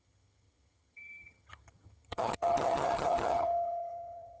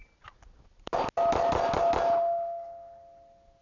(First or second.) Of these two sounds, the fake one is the first